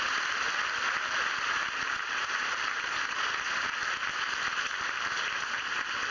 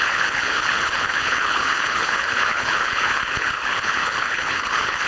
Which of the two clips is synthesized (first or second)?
second